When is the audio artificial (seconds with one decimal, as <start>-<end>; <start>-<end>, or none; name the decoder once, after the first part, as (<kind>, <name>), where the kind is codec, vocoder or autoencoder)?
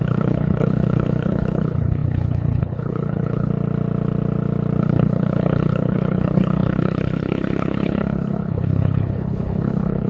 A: 0.0-3.5 (codec, HILCodec); 4.8-10.1